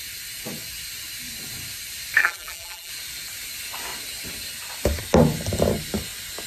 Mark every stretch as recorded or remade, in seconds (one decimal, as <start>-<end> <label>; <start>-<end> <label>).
0.0-2.2 recorded; 2.2-2.9 remade; 2.9-6.5 recorded